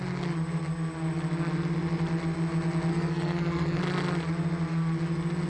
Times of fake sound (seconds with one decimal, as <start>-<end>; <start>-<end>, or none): 2.9-3.8